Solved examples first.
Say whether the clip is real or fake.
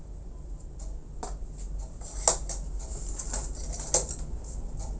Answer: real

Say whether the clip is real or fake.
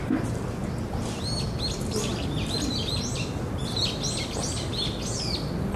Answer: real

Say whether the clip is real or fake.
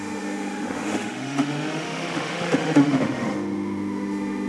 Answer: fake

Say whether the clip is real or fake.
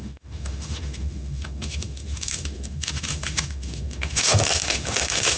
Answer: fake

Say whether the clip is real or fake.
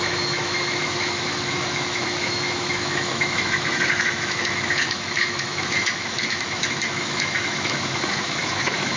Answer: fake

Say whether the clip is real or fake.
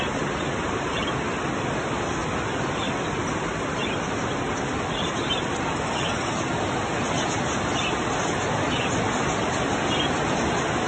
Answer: real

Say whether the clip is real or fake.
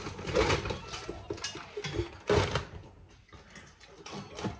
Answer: real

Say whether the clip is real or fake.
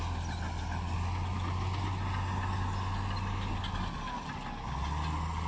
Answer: real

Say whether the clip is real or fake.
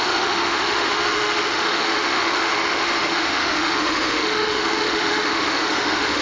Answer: fake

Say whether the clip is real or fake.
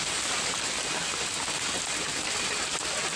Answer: real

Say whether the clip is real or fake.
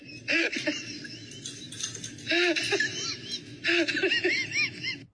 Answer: real